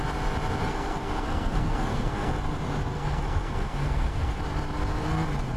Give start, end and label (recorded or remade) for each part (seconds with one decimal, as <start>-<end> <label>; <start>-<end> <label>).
0.0-0.6 recorded; 0.6-2.3 remade; 2.3-2.9 recorded; 2.9-4.4 remade; 4.4-5.6 recorded

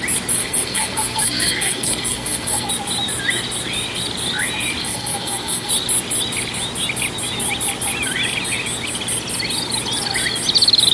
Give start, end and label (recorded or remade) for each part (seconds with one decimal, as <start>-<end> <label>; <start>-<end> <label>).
0.0-0.4 recorded; 0.4-2.7 remade; 2.7-4.8 recorded; 4.8-5.7 remade; 5.7-10.9 recorded

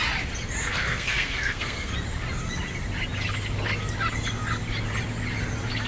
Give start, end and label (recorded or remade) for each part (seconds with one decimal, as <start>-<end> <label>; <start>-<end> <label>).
0.0-0.6 recorded; 0.6-1.9 remade; 1.9-5.9 recorded

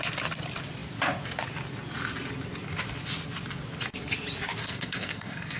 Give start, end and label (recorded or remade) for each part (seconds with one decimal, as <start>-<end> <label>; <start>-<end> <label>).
0.0-4.6 recorded; 4.6-5.6 remade

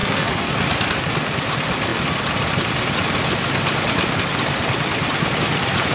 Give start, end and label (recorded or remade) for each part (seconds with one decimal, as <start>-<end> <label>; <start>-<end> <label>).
0.0-0.5 remade; 0.5-5.9 recorded

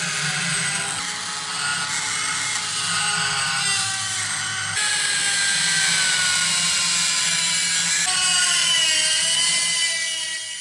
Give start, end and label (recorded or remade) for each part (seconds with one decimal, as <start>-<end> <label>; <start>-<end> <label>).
0.0-10.6 recorded

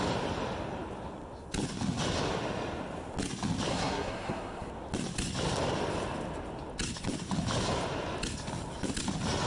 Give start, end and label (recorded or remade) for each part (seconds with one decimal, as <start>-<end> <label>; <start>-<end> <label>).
0.0-3.7 recorded; 3.7-4.7 remade; 4.7-9.5 recorded

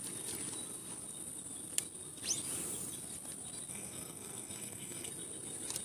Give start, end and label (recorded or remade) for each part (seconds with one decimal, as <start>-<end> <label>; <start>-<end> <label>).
0.0-3.7 recorded; 3.7-5.1 remade; 5.1-5.8 recorded